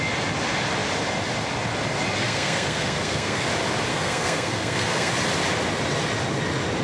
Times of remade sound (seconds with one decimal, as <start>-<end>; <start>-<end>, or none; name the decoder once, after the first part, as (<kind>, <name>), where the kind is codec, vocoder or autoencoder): 2.2-3.5 (codec, SNAC); 3.9-5.1